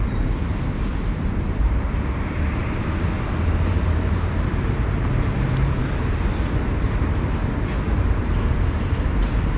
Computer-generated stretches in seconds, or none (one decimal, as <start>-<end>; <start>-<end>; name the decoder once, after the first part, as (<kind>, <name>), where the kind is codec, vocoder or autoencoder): 0.0-2.6 (vocoder, BigVGAN v2); 3.7-5.8; 8.0-9.6